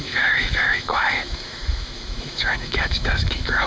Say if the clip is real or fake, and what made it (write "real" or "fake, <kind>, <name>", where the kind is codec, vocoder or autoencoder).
fake, autoencoder, DAC-VAE